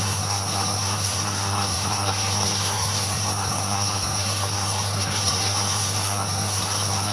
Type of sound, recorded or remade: remade